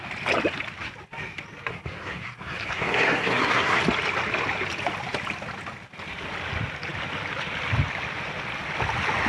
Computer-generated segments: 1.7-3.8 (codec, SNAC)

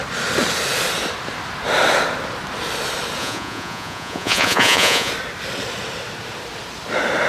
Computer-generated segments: 3.2-5.1 (vocoder, Vocos)

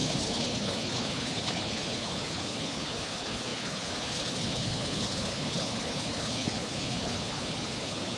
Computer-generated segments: 0.0-8.2 (codec, HILCodec)

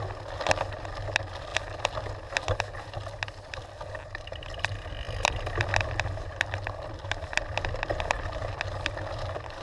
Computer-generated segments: none

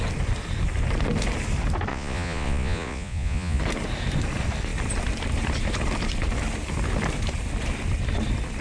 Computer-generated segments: 1.9-3.6 (vocoder, Vocos)

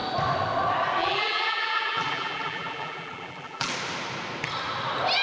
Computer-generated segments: 1.0-3.7 (vocoder, BigVGAN v2)

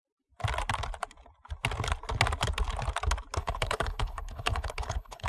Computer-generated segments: 3.4-5.3 (codec, HILCodec)